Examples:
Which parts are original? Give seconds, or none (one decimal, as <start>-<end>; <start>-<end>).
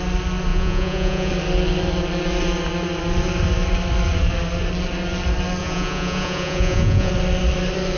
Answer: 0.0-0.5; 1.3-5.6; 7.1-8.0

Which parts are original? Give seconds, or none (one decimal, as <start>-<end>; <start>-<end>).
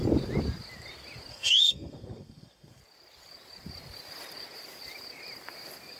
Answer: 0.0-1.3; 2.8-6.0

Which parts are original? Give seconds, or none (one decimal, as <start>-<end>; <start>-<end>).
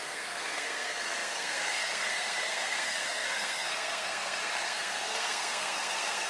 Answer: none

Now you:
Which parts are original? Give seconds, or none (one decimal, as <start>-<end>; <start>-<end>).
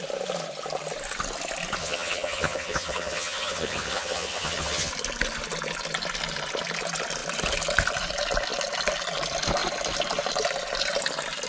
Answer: 0.0-1.8; 4.9-11.5